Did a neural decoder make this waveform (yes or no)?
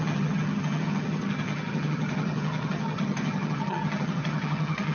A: yes